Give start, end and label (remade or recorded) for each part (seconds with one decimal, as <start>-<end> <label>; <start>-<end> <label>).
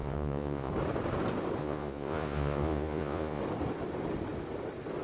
0.0-0.7 remade; 0.7-1.6 recorded; 1.6-3.4 remade; 3.4-5.0 recorded